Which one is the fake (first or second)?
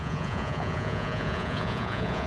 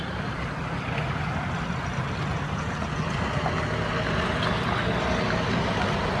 first